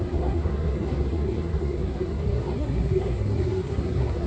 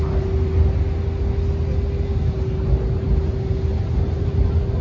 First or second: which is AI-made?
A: first